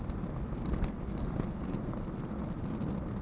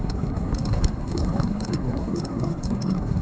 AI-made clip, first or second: second